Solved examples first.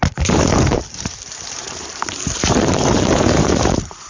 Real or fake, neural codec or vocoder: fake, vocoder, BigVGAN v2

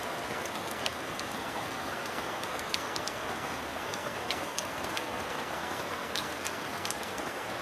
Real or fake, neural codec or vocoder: fake, codec, SNAC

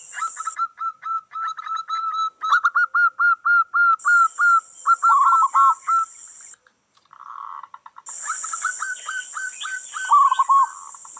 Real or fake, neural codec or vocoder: real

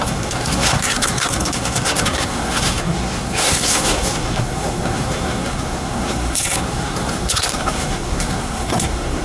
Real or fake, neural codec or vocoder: fake, codec, SNAC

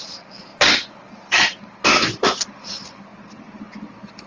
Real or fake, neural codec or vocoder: real